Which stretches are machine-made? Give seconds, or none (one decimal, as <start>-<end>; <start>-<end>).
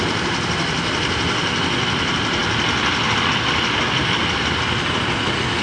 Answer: none